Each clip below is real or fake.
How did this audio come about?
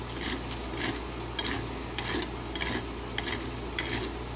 real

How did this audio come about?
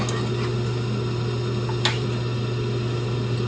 real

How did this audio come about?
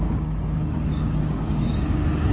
fake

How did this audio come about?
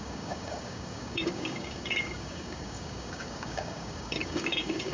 fake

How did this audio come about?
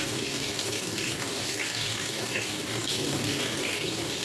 fake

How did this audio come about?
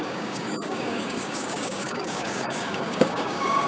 fake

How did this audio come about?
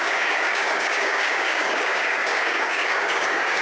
fake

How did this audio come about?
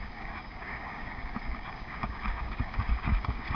fake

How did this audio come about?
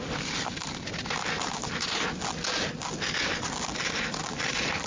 real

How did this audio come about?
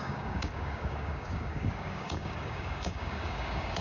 fake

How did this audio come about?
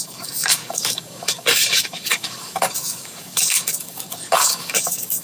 fake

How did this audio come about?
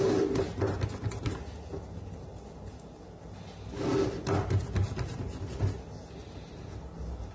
real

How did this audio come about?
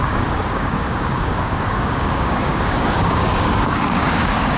fake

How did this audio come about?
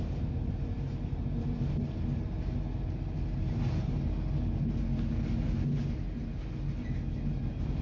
real